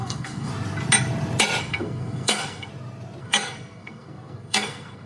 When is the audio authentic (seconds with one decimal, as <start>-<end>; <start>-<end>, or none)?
0.5-1.6; 2.7-3.2